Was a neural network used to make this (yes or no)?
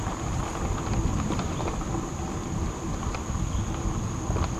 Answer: no